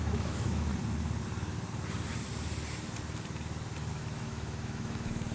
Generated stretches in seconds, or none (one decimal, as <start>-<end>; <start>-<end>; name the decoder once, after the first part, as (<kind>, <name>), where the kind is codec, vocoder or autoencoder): 0.0-0.7 (autoencoder, DAC-VAE); 3.9-5.3